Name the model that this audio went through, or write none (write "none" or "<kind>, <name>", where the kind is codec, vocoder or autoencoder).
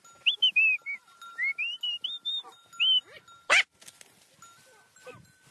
none